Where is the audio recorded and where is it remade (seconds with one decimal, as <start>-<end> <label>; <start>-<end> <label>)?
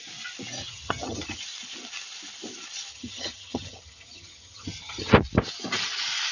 0.0-0.6 recorded; 0.6-1.4 remade; 1.4-2.9 recorded; 2.9-5.1 remade; 5.1-6.3 recorded